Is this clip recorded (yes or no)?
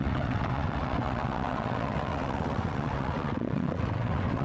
no